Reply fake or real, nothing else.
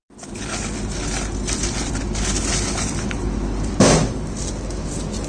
real